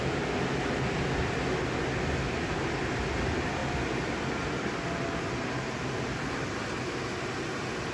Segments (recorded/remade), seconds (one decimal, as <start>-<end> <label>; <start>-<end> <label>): 0.0-7.9 recorded